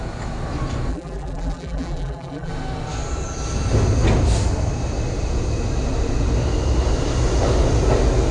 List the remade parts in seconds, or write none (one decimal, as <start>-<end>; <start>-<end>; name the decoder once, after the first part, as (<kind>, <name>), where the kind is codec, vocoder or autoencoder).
0.9-2.5 (vocoder, BigVGAN v2)